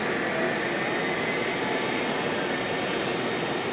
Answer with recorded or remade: recorded